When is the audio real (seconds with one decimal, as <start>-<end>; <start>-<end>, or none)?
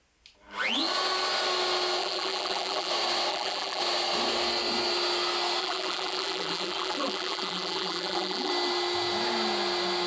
0.0-2.0; 2.9-3.3; 3.8-5.6; 8.5-10.1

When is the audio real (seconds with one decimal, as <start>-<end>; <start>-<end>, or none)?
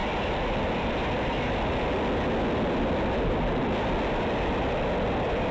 0.0-5.5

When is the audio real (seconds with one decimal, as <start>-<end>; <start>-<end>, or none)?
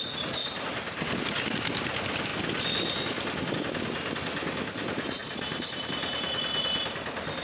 0.0-5.2; 5.9-7.4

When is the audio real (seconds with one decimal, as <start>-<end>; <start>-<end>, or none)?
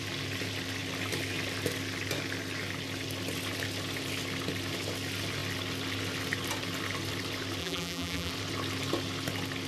0.0-7.6; 8.3-9.7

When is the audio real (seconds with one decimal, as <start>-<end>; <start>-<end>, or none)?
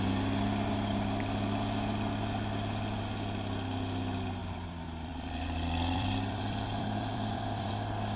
0.0-4.4; 7.7-8.2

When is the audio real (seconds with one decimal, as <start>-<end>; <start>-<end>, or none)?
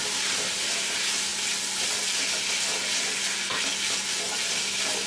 0.0-5.1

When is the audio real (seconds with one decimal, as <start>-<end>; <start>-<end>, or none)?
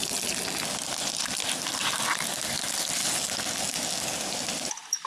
0.0-5.1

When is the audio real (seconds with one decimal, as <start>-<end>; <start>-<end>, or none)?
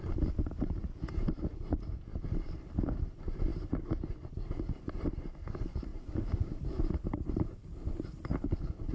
2.1-2.9